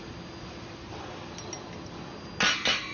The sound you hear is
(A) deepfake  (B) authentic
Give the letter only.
B